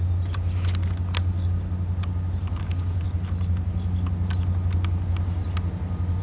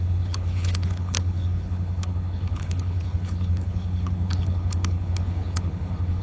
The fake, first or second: second